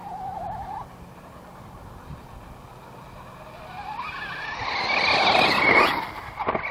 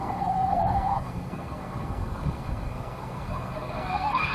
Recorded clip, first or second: first